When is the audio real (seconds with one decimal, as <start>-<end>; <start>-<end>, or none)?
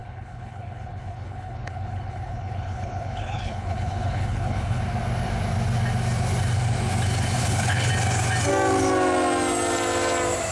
4.8-7.4; 7.9-10.5